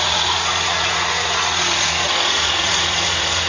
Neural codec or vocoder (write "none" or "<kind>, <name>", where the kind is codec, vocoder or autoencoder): vocoder, Vocos